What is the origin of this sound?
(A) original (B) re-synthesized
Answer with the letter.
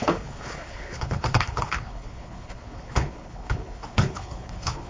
B